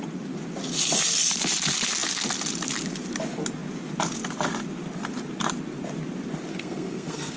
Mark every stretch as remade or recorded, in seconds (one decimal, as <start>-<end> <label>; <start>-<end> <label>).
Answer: 0.0-6.5 recorded; 6.5-7.4 remade